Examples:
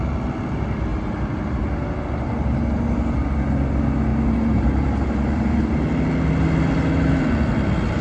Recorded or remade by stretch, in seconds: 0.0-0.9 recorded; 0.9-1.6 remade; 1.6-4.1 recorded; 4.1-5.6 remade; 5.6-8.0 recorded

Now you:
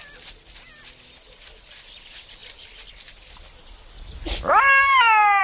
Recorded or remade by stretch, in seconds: 0.0-5.4 recorded

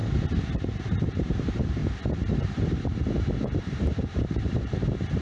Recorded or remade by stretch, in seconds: 0.0-0.8 recorded; 0.8-1.8 remade; 1.8-2.4 recorded; 2.4-5.2 remade

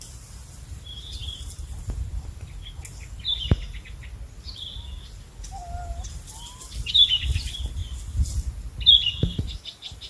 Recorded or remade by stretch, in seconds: 0.0-10.1 recorded

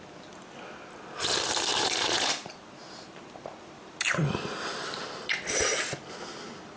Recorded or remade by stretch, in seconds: 0.0-1.7 recorded; 1.7-5.8 remade; 5.8-6.8 recorded

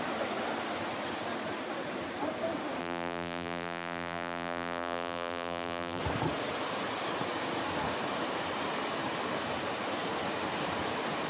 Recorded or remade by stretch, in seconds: 0.0-2.8 recorded; 2.8-6.0 remade; 6.0-11.3 recorded

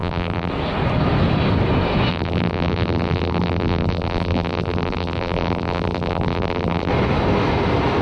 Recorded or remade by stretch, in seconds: 0.0-0.5 remade; 0.5-2.1 recorded; 2.1-6.9 remade; 6.9-8.0 recorded

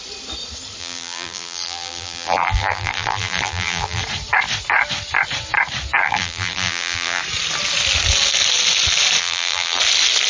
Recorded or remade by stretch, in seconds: 0.0-0.8 recorded; 0.8-4.0 remade; 4.0-6.0 recorded; 6.0-7.2 remade; 7.2-9.2 recorded; 9.2-9.8 remade; 9.8-10.3 recorded